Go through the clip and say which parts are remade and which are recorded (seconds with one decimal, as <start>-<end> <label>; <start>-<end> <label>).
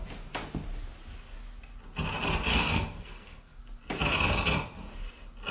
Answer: 0.0-2.5 recorded; 2.5-3.6 remade; 3.6-5.5 recorded